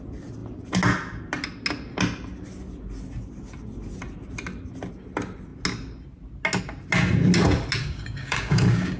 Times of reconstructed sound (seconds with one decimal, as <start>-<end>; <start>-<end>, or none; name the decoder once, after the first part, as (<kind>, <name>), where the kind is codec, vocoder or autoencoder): 7.8-9.0 (codec, DAC)